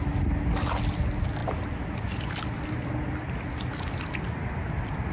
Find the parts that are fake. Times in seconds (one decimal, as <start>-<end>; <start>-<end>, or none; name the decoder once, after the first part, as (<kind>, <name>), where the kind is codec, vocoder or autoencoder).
none